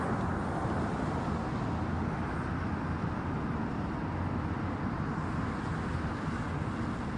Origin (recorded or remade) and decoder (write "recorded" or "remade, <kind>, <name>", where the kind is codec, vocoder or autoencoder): recorded